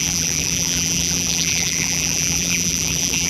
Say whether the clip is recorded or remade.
remade